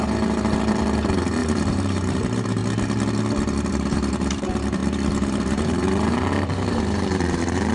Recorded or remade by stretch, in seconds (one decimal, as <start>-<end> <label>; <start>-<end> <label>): 0.0-2.6 remade; 2.6-3.7 recorded; 3.7-7.7 remade